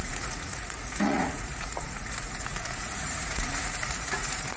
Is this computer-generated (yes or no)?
yes